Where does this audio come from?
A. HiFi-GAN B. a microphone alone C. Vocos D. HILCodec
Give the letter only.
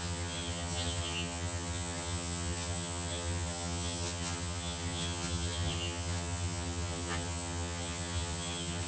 A